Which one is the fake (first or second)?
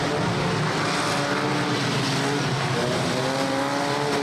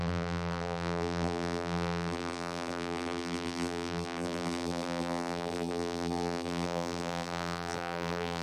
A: second